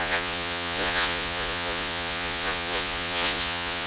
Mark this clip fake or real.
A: fake